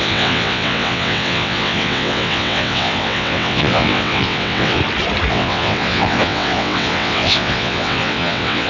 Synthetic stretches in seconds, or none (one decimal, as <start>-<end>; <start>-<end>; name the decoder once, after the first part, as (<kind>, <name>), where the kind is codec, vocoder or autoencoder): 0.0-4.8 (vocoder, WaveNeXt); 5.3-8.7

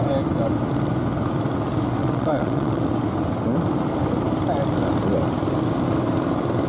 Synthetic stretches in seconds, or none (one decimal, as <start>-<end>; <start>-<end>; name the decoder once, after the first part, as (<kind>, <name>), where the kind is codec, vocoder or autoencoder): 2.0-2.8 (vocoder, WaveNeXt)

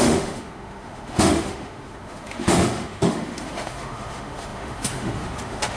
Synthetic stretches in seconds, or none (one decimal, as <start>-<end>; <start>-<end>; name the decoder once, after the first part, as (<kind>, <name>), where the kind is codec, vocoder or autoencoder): 0.0-5.8 (autoencoder, DAC-VAE)